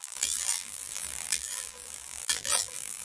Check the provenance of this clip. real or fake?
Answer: fake